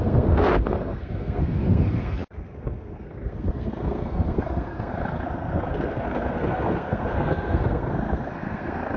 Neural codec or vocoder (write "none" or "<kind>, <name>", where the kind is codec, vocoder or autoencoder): codec, SNAC